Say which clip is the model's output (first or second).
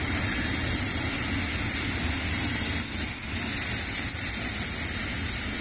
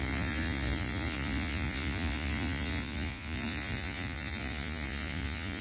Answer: second